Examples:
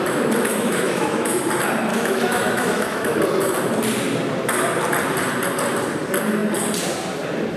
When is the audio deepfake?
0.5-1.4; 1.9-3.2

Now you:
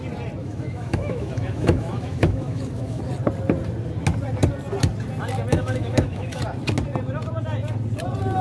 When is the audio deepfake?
0.4-3.0; 5.5-6.4